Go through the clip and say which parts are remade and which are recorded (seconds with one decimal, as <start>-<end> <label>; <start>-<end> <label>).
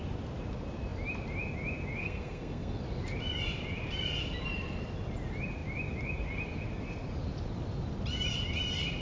0.0-2.0 recorded; 2.0-2.8 remade; 2.8-9.0 recorded